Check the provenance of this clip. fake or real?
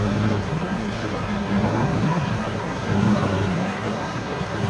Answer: fake